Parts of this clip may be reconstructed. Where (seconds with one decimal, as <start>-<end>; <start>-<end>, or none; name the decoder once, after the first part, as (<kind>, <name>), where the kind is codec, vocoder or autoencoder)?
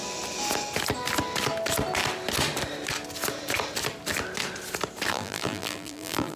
5.1-6.4 (vocoder, BigVGAN v2)